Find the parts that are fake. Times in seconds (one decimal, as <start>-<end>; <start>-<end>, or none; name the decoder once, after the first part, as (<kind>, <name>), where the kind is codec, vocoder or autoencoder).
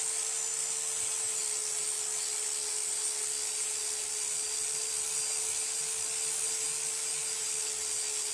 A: none